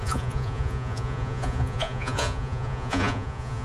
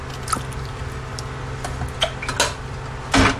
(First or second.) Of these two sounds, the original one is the second